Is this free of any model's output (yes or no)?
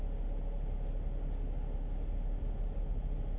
yes